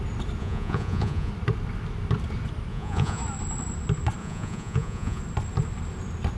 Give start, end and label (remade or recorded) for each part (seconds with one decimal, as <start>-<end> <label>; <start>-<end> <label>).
0.0-0.4 recorded; 0.4-1.3 remade; 1.3-2.7 recorded; 2.7-3.2 remade; 3.2-4.2 recorded; 4.2-5.2 remade; 5.2-6.4 recorded